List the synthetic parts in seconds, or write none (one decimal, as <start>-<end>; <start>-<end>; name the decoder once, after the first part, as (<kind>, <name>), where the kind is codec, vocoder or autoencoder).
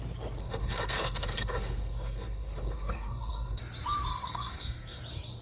0.4-3.6 (codec, SNAC); 4.1-5.0